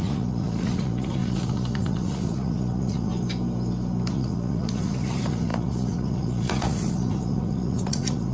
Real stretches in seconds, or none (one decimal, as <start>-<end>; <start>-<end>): 3.1-4.1